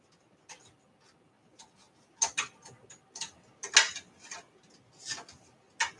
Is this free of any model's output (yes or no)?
yes